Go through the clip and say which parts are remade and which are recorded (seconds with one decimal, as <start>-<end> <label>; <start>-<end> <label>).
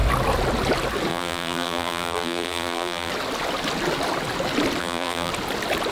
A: 0.0-1.1 recorded; 1.1-3.1 remade; 3.1-4.8 recorded; 4.8-5.3 remade; 5.3-5.9 recorded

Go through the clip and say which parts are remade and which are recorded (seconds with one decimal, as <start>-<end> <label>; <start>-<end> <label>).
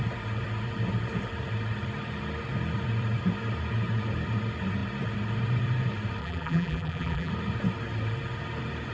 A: 0.0-6.2 recorded; 6.2-7.3 remade; 7.3-8.9 recorded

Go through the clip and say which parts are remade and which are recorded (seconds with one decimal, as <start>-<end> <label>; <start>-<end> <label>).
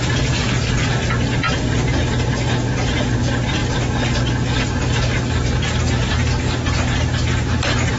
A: 0.0-8.0 recorded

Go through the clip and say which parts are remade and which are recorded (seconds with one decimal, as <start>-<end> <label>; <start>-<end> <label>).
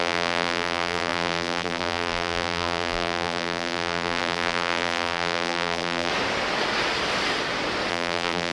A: 0.0-6.1 remade; 6.1-7.9 recorded; 7.9-8.5 remade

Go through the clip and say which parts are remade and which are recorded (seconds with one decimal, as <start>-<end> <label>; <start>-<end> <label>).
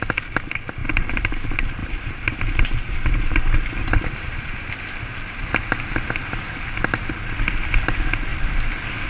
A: 0.0-0.8 recorded; 0.8-1.3 remade; 1.3-1.8 recorded; 1.8-4.7 remade; 4.7-9.1 recorded